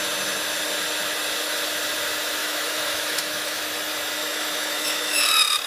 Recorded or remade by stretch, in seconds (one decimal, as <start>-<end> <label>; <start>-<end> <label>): 0.0-2.4 recorded; 2.4-3.6 remade; 3.6-4.2 recorded; 4.2-5.2 remade; 5.2-5.7 recorded

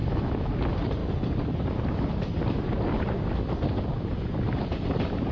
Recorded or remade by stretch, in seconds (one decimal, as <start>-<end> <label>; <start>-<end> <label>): 0.0-0.5 remade; 0.5-5.3 recorded